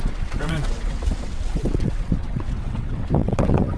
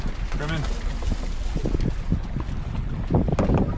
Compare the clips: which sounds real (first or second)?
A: second